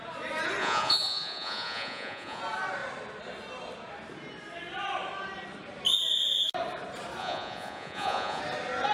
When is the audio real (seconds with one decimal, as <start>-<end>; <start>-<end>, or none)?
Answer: 0.0-0.6; 2.4-7.2; 8.4-8.9

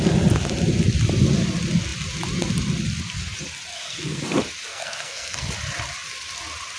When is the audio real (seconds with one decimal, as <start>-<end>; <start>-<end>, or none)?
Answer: 0.0-3.7; 4.2-4.7; 5.5-6.8

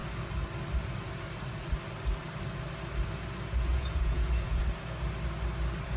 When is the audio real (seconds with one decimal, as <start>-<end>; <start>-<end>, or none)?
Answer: 0.0-3.7; 4.6-6.0

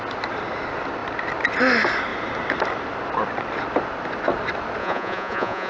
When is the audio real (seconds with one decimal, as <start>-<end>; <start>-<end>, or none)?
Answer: 0.0-4.8

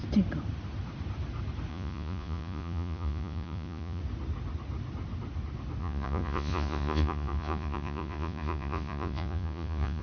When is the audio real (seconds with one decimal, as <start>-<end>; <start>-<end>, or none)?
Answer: 0.0-1.7; 4.0-5.8

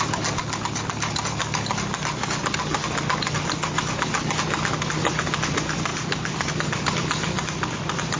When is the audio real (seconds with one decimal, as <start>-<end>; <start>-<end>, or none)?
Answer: 0.0-8.2

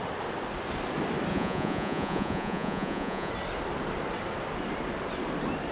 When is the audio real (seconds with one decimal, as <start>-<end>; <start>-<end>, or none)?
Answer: 0.0-1.3; 3.3-5.7

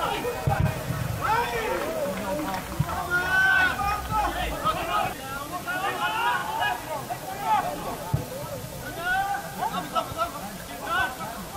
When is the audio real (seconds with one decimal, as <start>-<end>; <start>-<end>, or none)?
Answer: 0.0-11.6